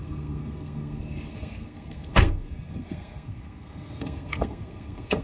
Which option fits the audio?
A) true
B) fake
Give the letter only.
B